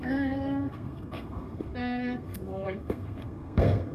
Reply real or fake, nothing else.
fake